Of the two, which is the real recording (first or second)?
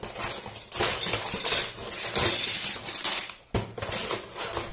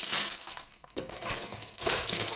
first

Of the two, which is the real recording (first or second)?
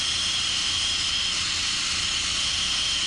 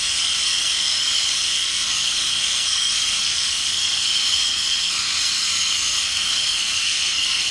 first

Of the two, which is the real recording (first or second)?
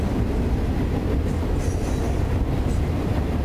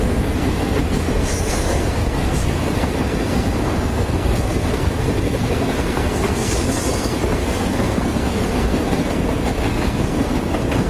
first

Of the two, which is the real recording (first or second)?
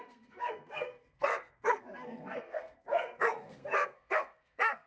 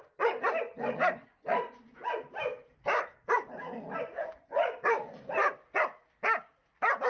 second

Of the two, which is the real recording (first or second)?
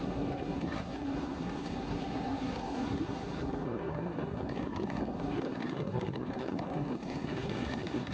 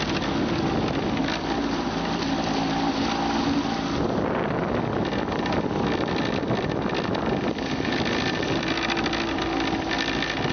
second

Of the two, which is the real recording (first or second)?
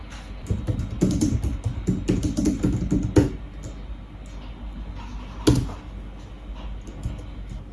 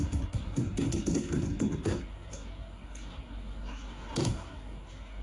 first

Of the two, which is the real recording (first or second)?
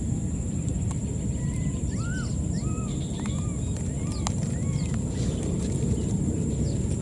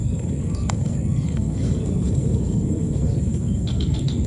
first